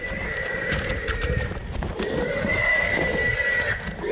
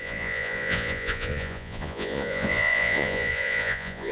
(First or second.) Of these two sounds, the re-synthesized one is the second